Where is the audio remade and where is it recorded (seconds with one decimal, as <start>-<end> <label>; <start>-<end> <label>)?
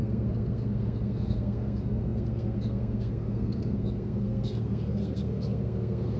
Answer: 0.0-6.2 remade